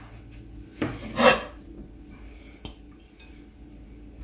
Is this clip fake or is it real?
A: real